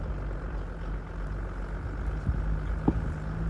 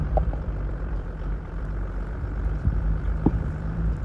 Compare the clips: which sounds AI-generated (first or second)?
second